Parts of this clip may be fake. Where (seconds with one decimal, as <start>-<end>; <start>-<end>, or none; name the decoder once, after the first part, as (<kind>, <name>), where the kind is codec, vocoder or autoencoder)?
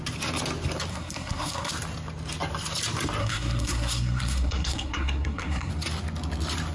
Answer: 0.9-1.7 (codec, SNAC); 3.2-5.7